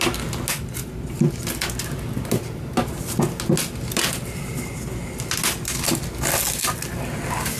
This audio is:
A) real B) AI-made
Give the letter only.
A